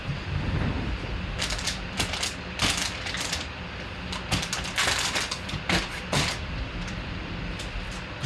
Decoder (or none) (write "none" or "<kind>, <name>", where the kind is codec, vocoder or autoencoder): vocoder, BigVGAN v2